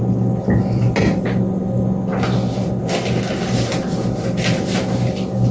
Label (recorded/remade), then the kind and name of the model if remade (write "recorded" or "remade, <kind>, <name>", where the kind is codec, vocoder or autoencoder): recorded